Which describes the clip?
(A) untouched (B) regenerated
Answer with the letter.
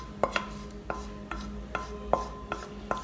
A